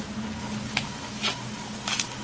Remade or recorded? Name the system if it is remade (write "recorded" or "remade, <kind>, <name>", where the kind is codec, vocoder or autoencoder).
recorded